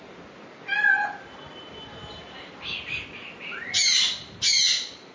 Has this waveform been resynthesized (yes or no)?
no